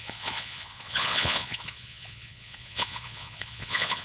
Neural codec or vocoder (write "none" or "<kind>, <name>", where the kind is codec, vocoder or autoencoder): vocoder, Vocos